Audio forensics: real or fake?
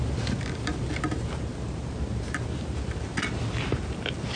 real